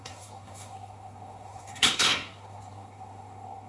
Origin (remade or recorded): remade